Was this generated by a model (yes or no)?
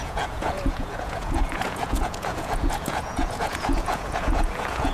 yes